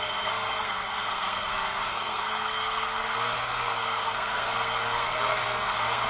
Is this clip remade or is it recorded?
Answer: remade